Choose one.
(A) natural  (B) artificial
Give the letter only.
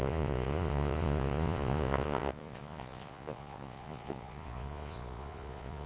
B